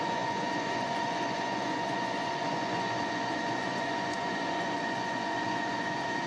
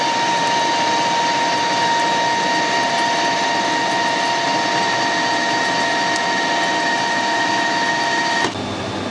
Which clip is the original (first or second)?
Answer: second